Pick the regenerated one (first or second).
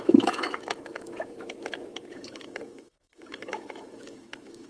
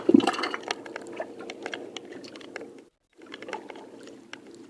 first